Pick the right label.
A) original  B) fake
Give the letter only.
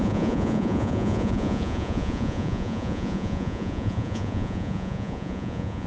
B